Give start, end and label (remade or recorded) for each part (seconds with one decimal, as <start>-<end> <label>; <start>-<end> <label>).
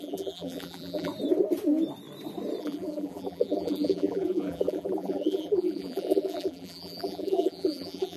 0.0-1.1 remade; 1.1-2.6 recorded; 2.6-8.2 remade